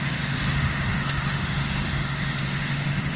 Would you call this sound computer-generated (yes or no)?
yes